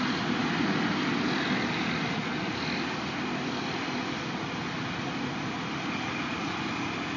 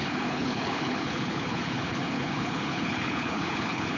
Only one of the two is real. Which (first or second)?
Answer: first